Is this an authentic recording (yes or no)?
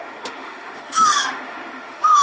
no